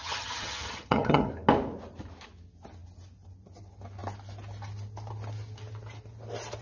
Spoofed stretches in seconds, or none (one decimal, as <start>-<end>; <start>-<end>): 0.0-1.3